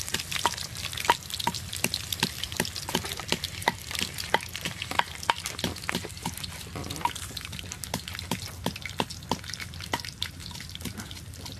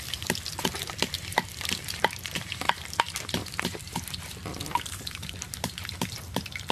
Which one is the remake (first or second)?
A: second